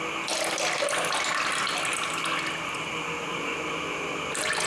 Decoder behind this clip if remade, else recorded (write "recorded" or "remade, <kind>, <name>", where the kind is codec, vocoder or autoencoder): recorded